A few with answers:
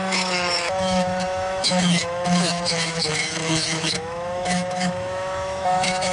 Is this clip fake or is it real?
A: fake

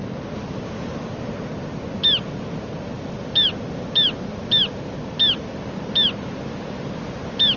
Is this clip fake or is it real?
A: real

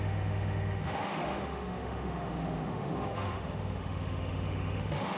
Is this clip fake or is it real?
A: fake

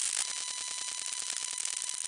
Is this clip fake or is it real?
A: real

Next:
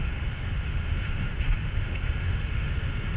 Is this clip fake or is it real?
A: fake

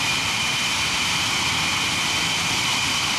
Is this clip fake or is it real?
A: real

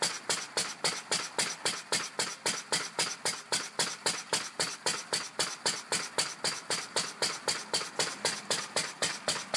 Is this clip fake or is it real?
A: real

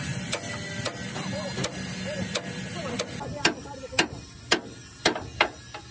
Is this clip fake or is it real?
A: real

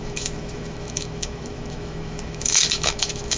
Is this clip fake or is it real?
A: fake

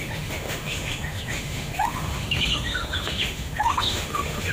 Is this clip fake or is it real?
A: fake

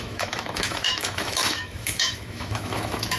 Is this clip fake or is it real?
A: fake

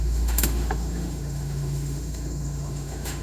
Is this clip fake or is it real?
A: fake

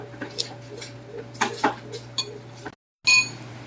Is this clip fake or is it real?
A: real